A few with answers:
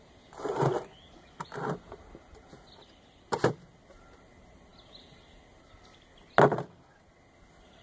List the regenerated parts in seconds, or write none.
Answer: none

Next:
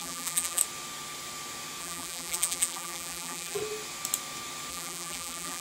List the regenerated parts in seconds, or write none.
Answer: 0.0-0.6 (vocoder, BigVGAN v2); 1.8-3.6; 4.7-5.6

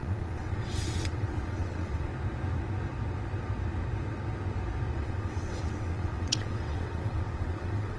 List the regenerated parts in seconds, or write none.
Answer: 0.0-2.1 (vocoder, WaveNeXt); 5.0-8.0